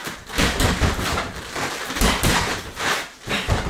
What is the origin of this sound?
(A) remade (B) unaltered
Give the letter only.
A